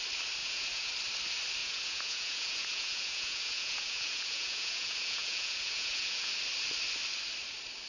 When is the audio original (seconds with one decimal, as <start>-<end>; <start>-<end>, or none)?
0.0-0.4; 0.9-1.6; 6.3-7.9